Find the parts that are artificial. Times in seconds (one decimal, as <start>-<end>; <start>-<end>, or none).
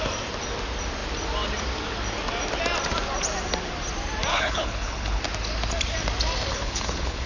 4.3-5.2; 6.5-7.3